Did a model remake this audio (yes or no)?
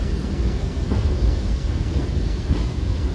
yes